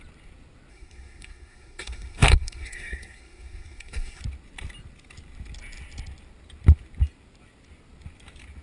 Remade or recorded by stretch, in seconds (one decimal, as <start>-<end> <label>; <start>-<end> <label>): 0.0-0.7 recorded; 0.7-4.2 remade; 4.2-8.6 recorded